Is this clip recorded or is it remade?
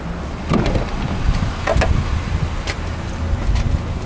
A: recorded